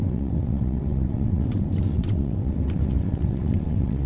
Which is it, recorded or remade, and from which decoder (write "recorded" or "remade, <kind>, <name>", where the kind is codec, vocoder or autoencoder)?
remade, vocoder, WaveNeXt